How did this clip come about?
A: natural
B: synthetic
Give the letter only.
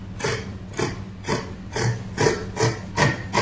A